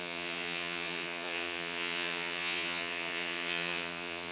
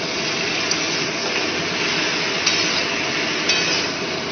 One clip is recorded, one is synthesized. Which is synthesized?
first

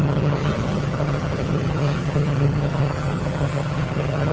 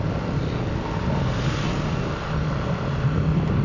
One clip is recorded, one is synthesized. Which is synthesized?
first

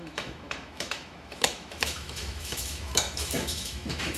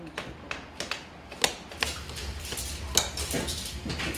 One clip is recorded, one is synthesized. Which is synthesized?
first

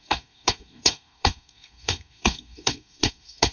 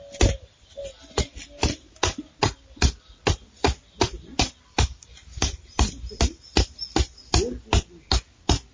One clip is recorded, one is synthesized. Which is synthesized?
first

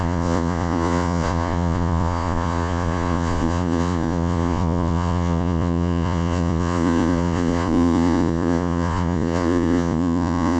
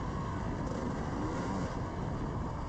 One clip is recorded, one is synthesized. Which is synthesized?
first